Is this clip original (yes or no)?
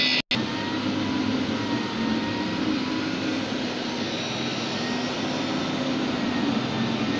yes